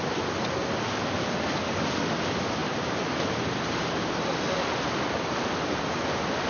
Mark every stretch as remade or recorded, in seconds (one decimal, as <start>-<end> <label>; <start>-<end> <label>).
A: 0.0-6.5 recorded